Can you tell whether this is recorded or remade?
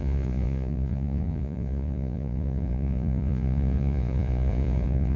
remade